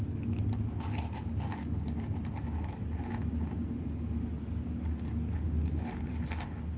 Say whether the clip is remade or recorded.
recorded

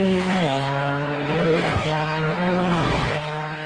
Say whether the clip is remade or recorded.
remade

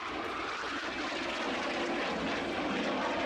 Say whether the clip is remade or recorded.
recorded